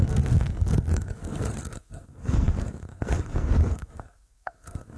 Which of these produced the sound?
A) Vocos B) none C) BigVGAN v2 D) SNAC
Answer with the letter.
D